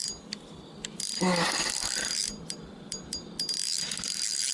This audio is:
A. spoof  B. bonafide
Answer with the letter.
B